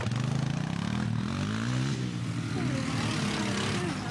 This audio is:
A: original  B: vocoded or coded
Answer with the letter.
A